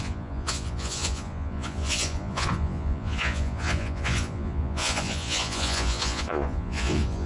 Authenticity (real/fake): fake